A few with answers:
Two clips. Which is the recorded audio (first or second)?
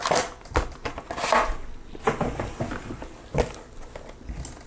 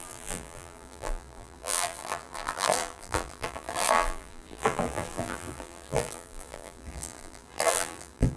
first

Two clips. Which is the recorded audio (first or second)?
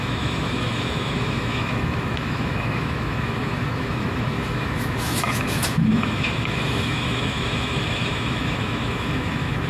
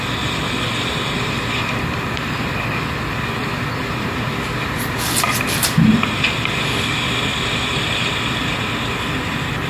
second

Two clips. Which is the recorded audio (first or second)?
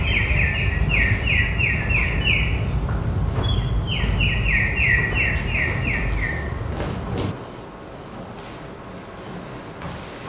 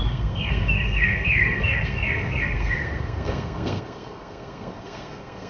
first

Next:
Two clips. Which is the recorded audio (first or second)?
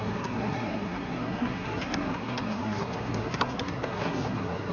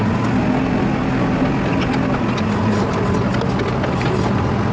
second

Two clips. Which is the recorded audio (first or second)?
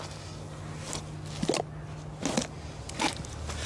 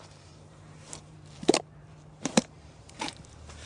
first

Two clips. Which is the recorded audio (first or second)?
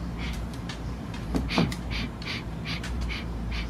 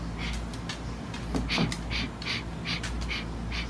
second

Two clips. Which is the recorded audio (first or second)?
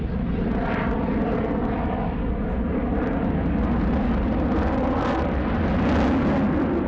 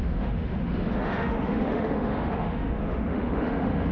first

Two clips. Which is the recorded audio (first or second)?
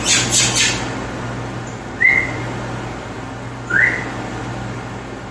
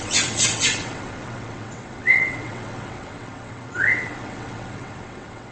first